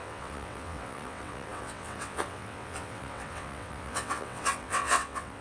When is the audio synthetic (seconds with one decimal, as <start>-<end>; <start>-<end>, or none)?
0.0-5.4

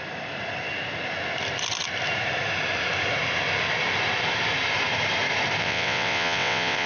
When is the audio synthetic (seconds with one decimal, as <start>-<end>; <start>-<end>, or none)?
5.6-6.9

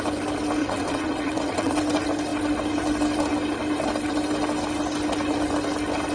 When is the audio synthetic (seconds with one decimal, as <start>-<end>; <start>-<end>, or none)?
0.6-1.8